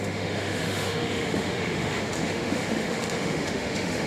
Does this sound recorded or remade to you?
remade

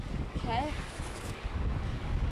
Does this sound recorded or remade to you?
remade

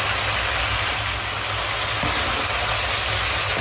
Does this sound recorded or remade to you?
recorded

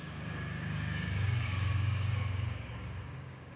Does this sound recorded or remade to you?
remade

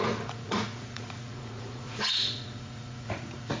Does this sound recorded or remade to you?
remade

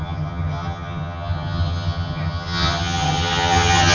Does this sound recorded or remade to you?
remade